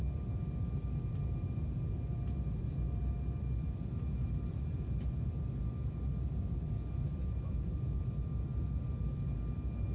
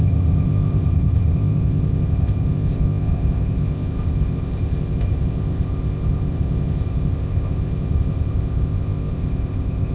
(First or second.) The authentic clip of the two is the first